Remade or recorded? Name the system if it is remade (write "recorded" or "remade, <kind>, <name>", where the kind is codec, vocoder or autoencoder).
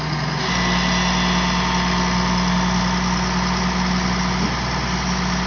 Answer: recorded